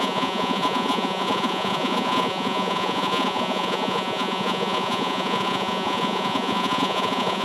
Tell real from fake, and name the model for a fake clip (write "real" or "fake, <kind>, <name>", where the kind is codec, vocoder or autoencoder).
fake, vocoder, Vocos